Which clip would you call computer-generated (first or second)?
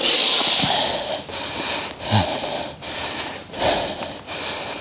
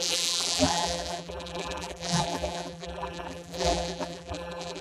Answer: second